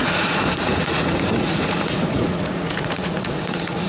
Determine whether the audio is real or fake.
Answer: fake